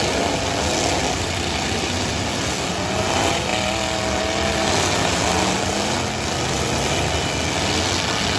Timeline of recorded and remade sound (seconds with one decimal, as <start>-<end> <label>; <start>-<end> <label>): 0.0-8.4 recorded